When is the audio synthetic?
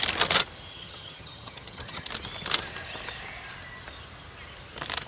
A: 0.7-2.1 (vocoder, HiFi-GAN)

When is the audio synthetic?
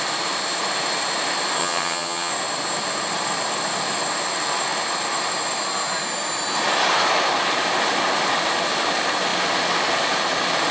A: 1.6-2.3 (vocoder, HiFi-GAN)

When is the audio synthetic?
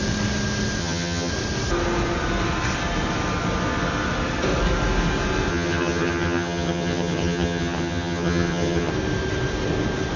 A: 0.8-1.3 (vocoder, HiFi-GAN); 5.5-8.9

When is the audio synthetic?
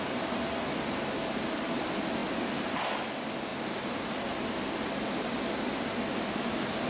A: none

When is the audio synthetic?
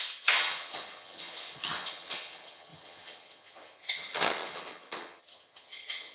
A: 0.0-6.1 (vocoder, HiFi-GAN)